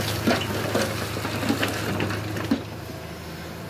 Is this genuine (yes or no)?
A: yes